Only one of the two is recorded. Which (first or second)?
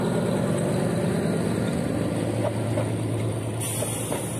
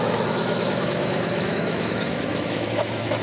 first